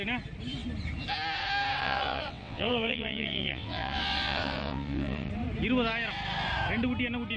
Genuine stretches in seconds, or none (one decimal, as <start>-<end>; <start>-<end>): 0.0-1.8; 5.3-7.4